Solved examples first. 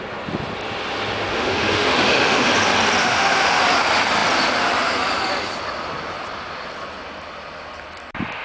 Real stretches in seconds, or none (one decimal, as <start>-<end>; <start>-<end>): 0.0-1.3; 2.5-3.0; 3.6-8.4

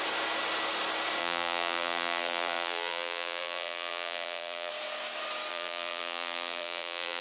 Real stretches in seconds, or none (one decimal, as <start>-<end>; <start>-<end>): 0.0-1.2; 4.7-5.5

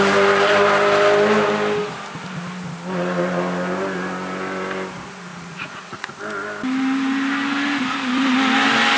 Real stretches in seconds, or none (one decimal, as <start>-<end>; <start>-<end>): 0.0-5.3; 6.2-9.0

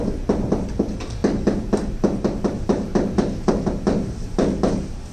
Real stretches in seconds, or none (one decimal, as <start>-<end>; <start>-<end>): 0.0-1.2; 3.5-5.1

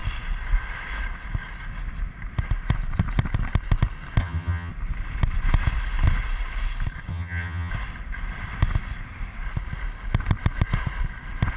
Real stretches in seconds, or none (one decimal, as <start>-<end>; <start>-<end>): 0.0-4.2; 4.7-7.1; 7.7-11.6

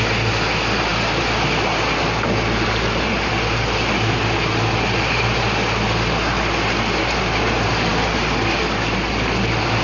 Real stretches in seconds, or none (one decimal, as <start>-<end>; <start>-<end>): 0.0-9.8